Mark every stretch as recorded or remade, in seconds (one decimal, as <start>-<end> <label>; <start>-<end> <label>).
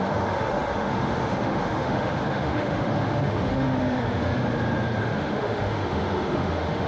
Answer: 0.0-4.3 remade; 4.3-5.0 recorded; 5.0-6.9 remade